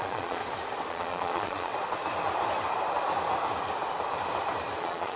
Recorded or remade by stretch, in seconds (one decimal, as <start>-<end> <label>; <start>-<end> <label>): 0.0-0.4 remade; 0.4-0.9 recorded; 0.9-1.7 remade; 1.7-4.8 recorded; 4.8-5.2 remade